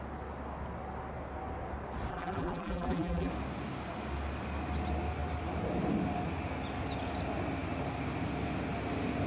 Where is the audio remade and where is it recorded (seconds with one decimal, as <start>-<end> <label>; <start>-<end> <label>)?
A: 0.0-2.1 recorded; 2.1-3.3 remade; 3.3-9.3 recorded